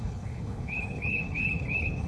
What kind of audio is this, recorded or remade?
remade